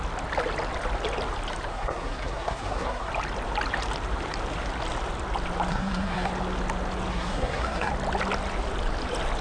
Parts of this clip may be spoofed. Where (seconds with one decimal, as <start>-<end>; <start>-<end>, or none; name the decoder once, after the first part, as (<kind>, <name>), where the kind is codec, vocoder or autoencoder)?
1.7-3.1 (codec, SNAC); 5.7-6.3; 7.1-7.9